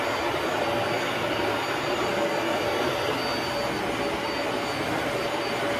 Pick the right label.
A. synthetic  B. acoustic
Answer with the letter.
B